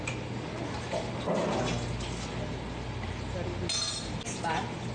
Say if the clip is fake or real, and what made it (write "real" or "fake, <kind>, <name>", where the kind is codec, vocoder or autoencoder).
real